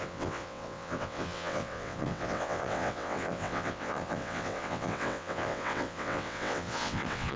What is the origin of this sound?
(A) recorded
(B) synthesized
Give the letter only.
B